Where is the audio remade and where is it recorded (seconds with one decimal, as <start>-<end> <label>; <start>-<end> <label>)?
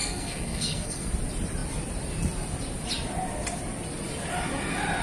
0.0-1.1 remade; 1.1-5.0 recorded